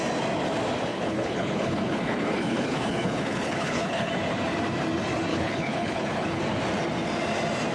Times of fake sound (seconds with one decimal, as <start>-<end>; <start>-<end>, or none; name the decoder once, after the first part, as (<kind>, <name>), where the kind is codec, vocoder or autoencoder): 0.9-4.1 (codec, HILCodec); 5.3-6.4